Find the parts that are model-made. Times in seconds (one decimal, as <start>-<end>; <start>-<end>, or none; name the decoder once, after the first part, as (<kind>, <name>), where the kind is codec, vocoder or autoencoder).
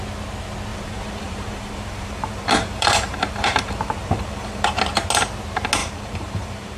0.7-4.8 (vocoder, BigVGAN v2); 5.8-6.8